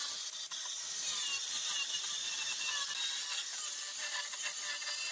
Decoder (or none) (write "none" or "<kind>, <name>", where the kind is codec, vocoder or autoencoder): none